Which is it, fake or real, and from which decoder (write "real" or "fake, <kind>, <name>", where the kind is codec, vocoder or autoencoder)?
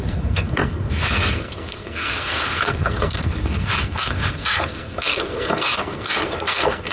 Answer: fake, codec, SNAC